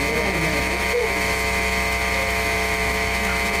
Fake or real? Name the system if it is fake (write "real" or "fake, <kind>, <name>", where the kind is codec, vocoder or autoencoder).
fake, autoencoder, DAC-VAE